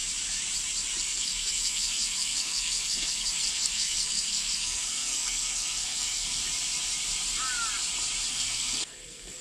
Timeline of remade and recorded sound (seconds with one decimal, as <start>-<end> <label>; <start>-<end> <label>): 0.0-1.0 recorded; 1.0-6.4 remade; 6.4-8.3 recorded; 8.3-9.4 remade

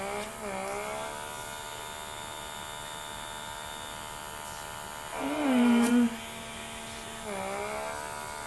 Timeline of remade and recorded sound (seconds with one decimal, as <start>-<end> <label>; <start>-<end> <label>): 0.0-5.1 recorded; 5.1-5.9 remade; 5.9-8.5 recorded

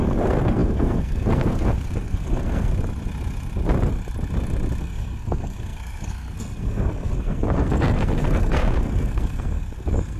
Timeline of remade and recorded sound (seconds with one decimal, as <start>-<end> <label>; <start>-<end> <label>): 0.0-2.7 remade; 2.7-4.8 recorded; 4.8-10.2 remade

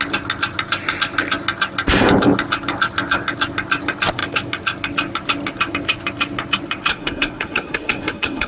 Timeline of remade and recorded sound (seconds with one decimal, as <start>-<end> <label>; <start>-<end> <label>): 0.0-6.9 recorded; 6.9-8.5 remade

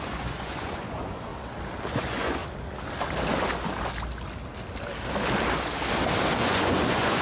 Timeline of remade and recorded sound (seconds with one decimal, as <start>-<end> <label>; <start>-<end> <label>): 0.0-1.3 remade; 1.3-1.9 recorded; 1.9-2.4 remade; 2.4-6.4 recorded; 6.4-7.2 remade

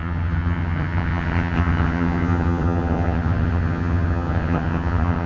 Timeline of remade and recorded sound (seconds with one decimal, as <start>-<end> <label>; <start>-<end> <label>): 0.0-5.3 remade

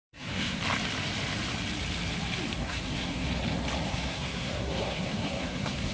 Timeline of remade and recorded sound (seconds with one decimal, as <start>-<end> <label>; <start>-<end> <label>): 0.0-0.6 remade; 0.6-2.6 recorded; 2.6-3.3 remade; 3.3-3.9 recorded; 3.9-5.9 remade